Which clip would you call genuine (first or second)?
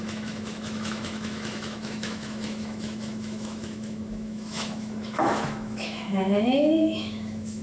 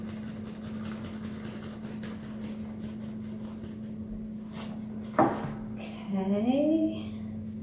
second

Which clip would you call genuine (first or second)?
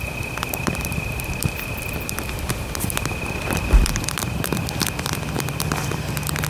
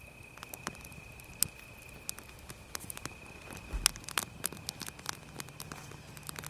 second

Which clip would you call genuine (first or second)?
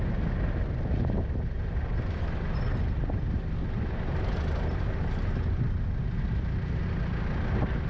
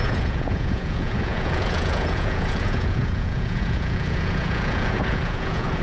first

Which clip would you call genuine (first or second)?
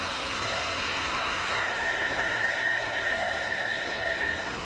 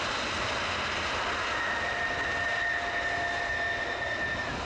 second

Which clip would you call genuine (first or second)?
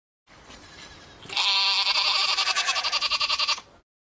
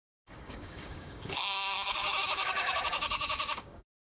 first